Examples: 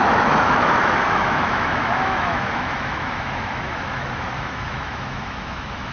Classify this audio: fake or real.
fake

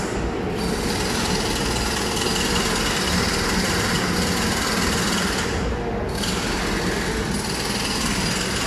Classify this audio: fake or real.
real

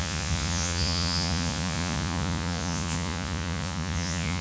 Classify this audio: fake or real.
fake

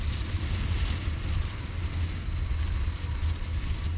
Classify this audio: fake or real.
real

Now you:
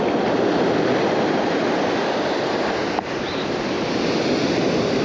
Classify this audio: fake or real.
real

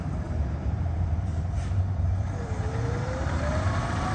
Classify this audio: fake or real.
fake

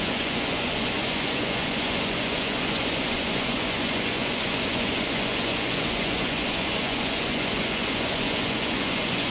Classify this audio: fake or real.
fake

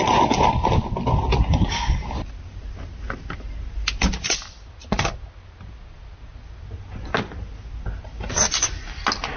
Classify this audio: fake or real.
real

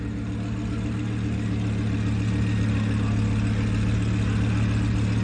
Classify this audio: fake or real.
real